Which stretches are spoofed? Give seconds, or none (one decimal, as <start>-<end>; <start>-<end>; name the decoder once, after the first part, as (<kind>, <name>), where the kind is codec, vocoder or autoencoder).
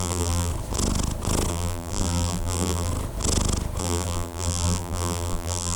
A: 0.0-0.5 (vocoder, BigVGAN v2); 1.5-2.9; 3.8-5.8